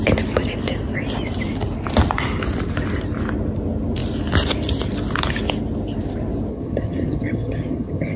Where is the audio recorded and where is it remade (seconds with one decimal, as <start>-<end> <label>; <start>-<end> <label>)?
0.0-6.5 recorded; 6.5-8.2 remade